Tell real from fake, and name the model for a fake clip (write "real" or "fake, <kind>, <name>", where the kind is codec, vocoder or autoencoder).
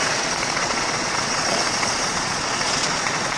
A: fake, vocoder, Vocos